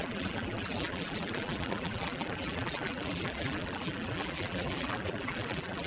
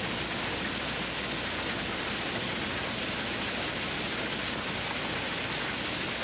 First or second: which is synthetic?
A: first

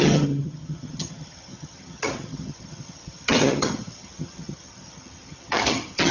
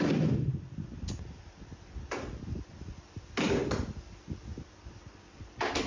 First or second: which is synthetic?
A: first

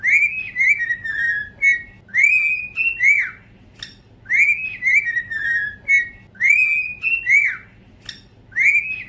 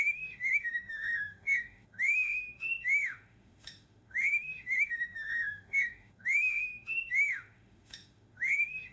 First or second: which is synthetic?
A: second